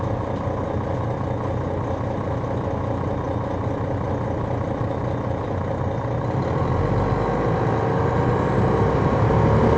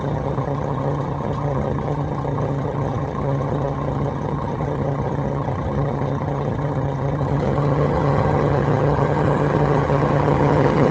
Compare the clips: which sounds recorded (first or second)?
first